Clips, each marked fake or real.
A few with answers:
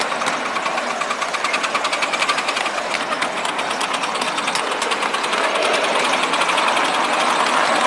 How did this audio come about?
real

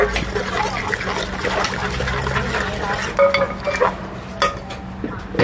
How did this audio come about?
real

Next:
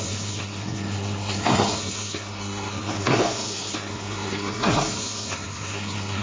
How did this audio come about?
fake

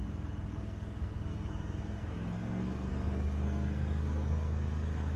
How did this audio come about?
fake